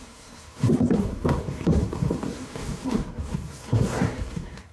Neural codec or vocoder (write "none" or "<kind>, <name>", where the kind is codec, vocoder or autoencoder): codec, SNAC